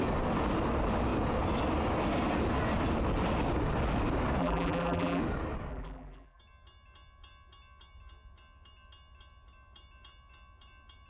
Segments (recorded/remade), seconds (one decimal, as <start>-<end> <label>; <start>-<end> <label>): 0.0-4.4 recorded; 4.4-5.2 remade; 5.2-5.7 recorded; 5.7-6.4 remade; 6.4-11.1 recorded